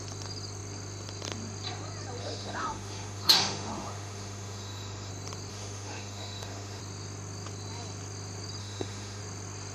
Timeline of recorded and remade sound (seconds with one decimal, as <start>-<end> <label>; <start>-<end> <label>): 0.0-2.2 recorded; 2.2-5.1 remade; 5.1-5.5 recorded; 5.5-6.8 remade; 6.8-8.6 recorded; 8.6-9.2 remade; 9.2-9.7 recorded